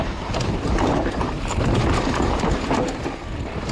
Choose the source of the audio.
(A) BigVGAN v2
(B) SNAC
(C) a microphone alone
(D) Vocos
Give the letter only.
C